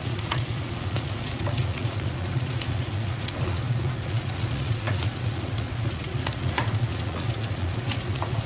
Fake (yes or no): yes